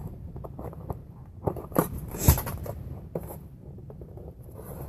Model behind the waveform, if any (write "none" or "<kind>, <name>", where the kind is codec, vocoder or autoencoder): vocoder, BigVGAN v2